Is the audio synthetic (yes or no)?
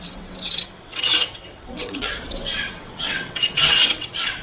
yes